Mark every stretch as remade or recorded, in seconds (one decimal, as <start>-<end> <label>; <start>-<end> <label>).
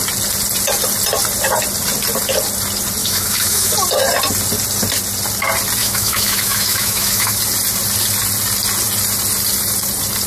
0.0-3.0 recorded; 3.0-3.7 remade; 3.7-5.8 recorded; 5.8-7.4 remade; 7.4-10.3 recorded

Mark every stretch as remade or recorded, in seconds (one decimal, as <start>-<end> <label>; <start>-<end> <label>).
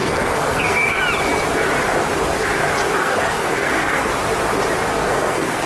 0.0-1.0 remade; 1.0-3.0 recorded; 3.0-4.1 remade; 4.1-4.9 recorded; 4.9-5.7 remade